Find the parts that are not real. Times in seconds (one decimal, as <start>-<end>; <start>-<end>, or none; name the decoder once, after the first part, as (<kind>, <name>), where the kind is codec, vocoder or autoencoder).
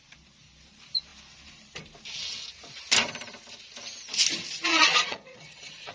4.7-5.9 (vocoder, Vocos)